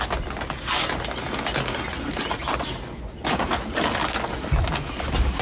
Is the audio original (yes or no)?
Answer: yes